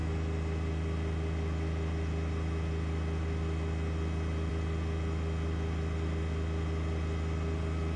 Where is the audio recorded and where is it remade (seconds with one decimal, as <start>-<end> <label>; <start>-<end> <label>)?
0.0-8.0 recorded